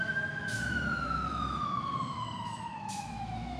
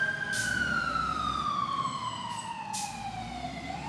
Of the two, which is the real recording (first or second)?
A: second